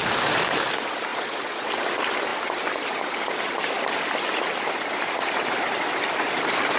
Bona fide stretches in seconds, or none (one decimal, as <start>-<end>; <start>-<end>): 0.0-1.1; 1.7-6.8